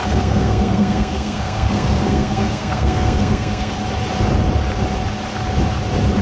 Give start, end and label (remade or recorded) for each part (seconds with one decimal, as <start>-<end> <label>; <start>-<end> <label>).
0.0-3.7 remade; 3.7-6.2 recorded